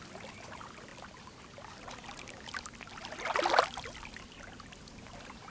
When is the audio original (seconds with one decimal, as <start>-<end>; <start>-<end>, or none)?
0.0-5.5